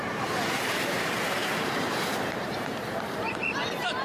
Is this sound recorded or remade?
remade